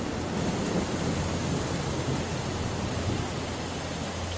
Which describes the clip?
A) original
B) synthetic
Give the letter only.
A